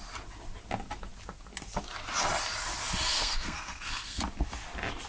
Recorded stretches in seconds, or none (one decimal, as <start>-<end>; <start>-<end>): 0.0-3.1; 4.2-5.1